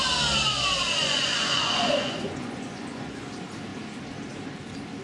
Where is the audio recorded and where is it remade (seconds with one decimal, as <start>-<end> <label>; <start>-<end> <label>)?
0.0-1.0 recorded; 1.0-3.3 remade; 3.3-5.0 recorded